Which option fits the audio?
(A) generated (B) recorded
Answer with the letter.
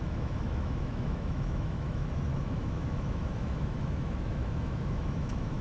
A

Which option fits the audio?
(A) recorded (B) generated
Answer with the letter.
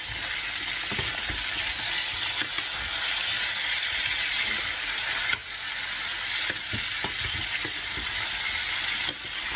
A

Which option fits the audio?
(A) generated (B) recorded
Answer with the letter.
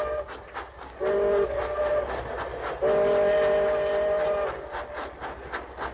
B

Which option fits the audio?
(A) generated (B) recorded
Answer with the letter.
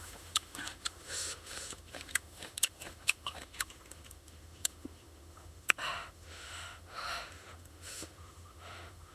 A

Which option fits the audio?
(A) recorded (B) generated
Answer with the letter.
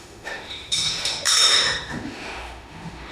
B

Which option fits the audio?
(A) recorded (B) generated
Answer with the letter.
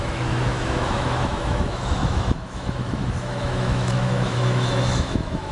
B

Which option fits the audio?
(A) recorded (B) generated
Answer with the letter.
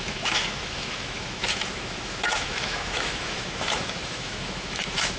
B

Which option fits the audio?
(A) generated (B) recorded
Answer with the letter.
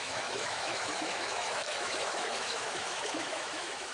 A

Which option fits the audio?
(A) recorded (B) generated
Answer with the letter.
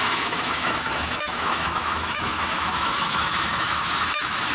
B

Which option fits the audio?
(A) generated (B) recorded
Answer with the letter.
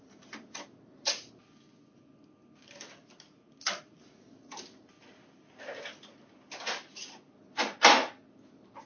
B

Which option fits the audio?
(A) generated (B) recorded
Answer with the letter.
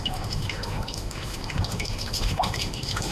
A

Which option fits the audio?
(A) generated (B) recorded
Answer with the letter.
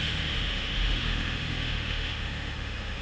A